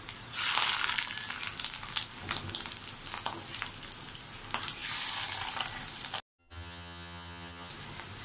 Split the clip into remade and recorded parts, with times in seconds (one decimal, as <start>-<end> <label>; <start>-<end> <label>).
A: 0.0-6.4 recorded; 6.4-7.7 remade; 7.7-8.2 recorded